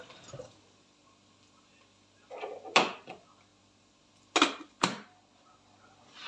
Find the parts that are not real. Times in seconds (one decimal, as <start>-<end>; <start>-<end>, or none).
none